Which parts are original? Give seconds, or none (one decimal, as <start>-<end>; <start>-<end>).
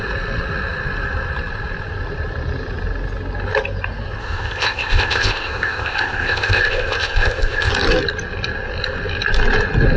0.0-4.2; 7.7-10.0